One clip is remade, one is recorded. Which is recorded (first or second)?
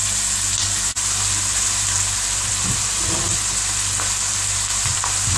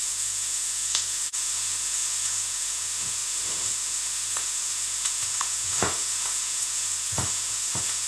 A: first